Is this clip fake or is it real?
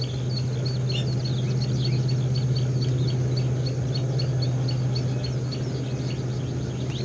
real